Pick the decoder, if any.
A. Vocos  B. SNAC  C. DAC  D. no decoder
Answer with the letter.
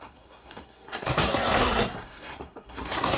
B